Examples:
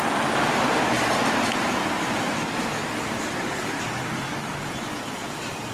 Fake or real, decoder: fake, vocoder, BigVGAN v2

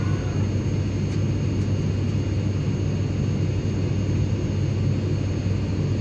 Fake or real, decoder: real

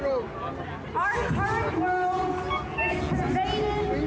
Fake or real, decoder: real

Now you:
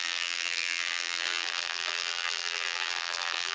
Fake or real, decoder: fake, vocoder, BigVGAN v2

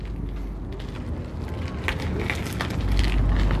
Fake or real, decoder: real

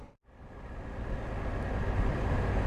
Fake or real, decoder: real